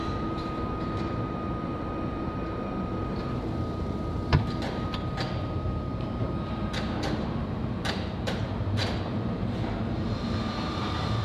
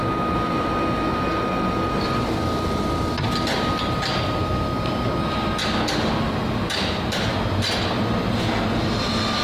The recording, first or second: second